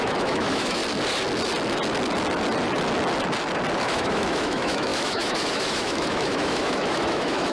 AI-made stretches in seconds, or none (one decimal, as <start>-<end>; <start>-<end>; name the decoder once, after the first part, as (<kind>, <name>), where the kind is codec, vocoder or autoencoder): 0.0-0.8 (autoencoder, DAC-VAE); 3.8-7.5

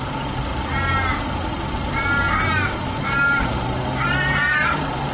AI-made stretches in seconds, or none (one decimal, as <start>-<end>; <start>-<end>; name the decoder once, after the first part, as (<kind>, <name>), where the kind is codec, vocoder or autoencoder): 0.5-3.6 (vocoder, BigVGAN v2)

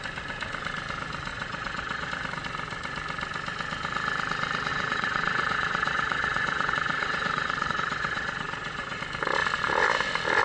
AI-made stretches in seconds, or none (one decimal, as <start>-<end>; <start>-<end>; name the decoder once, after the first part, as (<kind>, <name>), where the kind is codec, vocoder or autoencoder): 1.3-2.1 (vocoder, Vocos); 4.7-9.0

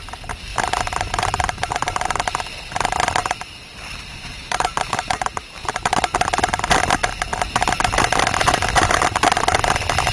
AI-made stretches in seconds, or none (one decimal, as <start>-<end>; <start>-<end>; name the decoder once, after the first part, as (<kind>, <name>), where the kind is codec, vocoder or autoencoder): 0.5-2.2 (vocoder, BigVGAN v2); 3.2-6.0

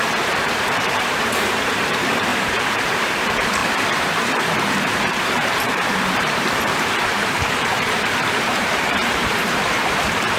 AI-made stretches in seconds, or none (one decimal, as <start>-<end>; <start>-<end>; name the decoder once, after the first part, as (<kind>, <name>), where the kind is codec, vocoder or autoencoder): 0.0-10.4 (vocoder, BigVGAN v2)

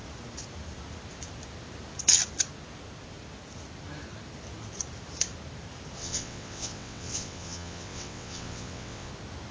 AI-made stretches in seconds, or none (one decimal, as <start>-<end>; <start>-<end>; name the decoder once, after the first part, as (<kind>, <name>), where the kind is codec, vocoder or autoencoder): 6.0-9.1 (vocoder, WaveNeXt)